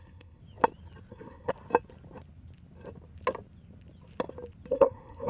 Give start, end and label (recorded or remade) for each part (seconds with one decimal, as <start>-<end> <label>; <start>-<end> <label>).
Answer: 0.0-0.4 remade; 0.4-1.1 recorded; 1.1-1.5 remade; 1.5-4.7 recorded; 4.7-5.3 remade